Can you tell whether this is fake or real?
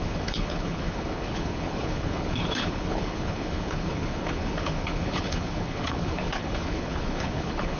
fake